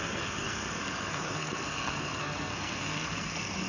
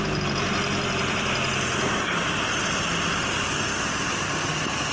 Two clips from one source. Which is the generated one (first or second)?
first